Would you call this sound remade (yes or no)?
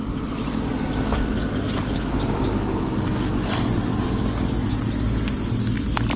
no